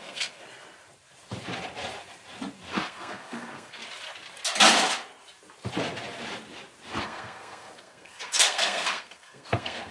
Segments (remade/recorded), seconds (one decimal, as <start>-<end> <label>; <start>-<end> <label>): 0.0-0.4 remade; 0.4-2.7 recorded; 2.7-3.8 remade; 3.8-7.0 recorded; 7.0-9.9 remade